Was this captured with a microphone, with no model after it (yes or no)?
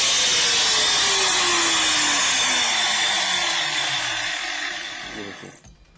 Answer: yes